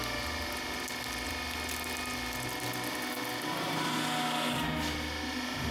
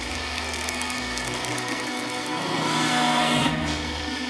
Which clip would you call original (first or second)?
first